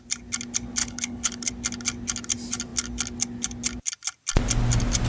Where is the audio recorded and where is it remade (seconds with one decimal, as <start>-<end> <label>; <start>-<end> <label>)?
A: 0.0-0.8 recorded; 0.8-1.5 remade; 1.5-5.1 recorded